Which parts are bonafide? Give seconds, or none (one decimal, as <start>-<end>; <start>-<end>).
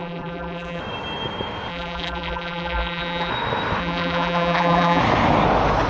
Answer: 0.8-1.7; 3.3-3.8; 5.0-5.9